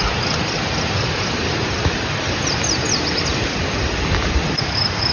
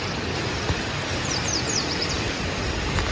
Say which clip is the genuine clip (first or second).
second